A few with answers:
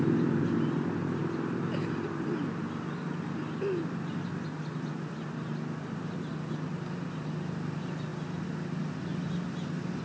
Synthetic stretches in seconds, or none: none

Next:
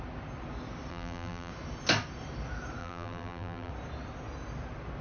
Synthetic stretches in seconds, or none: 0.9-1.5 (vocoder, BigVGAN v2); 2.8-3.7

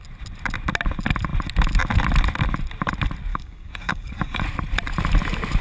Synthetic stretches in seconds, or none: 3.3-4.4 (codec, DAC)

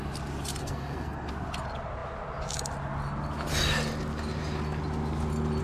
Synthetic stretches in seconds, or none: 0.6-1.3 (codec, SNAC)

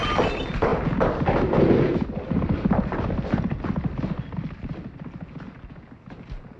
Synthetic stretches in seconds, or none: none

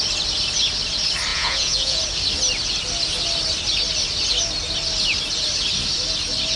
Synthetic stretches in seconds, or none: 1.3-2.0 (vocoder, Vocos)

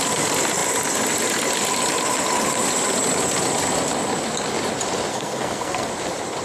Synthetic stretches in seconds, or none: 5.1-5.9 (codec, SNAC)

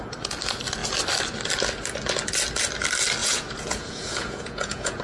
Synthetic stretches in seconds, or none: 3.2-5.0 (vocoder, Vocos)